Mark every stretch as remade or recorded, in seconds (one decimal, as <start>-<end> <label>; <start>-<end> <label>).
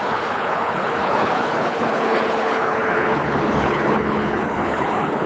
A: 0.0-5.3 remade